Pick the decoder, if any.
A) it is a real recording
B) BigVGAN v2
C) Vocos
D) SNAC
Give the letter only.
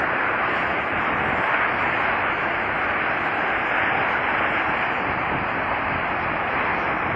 A